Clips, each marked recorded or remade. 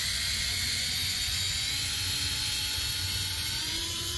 remade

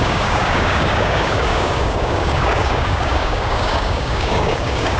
remade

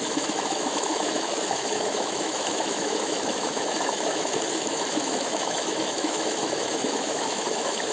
remade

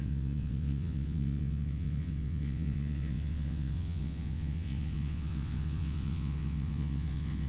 remade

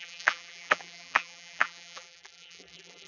remade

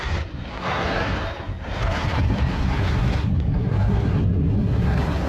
remade